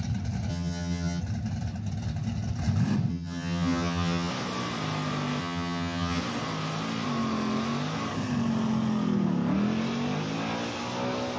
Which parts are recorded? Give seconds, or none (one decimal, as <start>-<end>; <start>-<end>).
0.0-0.5; 1.2-3.1; 4.3-5.4; 6.2-11.4